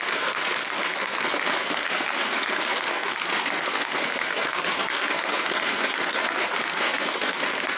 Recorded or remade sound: remade